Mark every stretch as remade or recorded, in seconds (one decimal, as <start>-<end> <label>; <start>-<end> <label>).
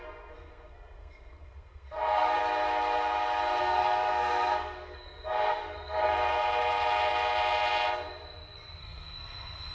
0.0-2.4 remade; 2.4-3.6 recorded; 3.6-6.1 remade; 6.1-8.8 recorded; 8.8-9.7 remade